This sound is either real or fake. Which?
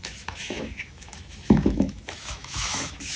fake